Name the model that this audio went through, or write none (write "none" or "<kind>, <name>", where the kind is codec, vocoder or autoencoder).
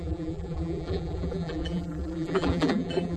vocoder, BigVGAN v2